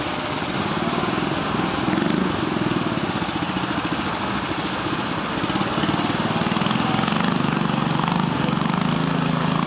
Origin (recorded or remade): recorded